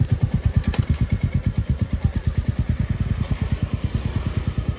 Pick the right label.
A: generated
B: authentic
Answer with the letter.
B